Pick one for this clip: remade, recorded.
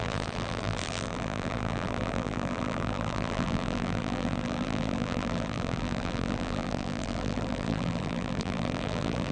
remade